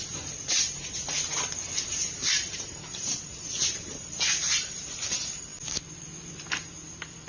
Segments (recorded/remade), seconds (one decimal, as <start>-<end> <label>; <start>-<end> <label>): 0.0-2.2 recorded; 2.2-3.5 remade; 3.5-7.3 recorded